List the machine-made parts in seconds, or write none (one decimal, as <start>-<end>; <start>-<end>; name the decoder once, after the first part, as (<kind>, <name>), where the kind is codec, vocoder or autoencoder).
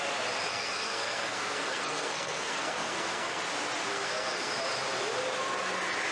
0.5-3.4 (codec, SNAC); 3.9-4.5